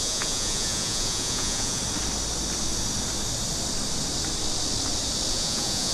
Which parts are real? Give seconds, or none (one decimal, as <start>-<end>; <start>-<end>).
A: 1.8-5.3

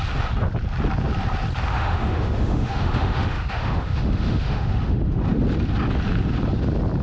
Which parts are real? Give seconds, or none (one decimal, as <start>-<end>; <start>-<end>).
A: 0.0-1.7; 5.2-7.0

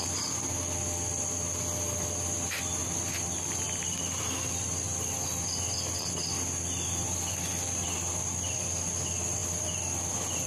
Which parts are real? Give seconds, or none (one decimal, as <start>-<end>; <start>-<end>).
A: 0.0-10.5

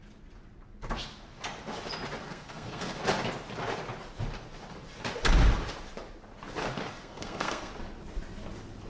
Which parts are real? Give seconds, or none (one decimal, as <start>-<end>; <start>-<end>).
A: 0.0-2.2; 3.0-6.9; 7.7-8.9

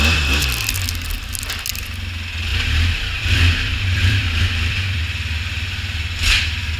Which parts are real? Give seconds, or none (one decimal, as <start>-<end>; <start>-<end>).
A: 0.0-2.5; 5.0-6.8